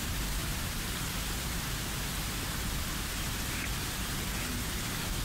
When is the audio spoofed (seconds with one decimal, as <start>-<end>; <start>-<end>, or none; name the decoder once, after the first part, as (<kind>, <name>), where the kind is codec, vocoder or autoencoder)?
0.0-5.2 (vocoder, BigVGAN v2)